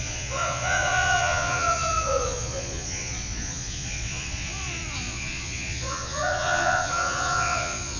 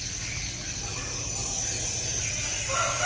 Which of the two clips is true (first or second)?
second